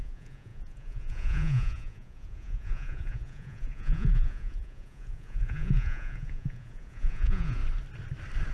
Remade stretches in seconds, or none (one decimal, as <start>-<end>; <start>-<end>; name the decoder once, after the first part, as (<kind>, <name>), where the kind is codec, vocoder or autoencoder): 0.0-7.6 (vocoder, Vocos)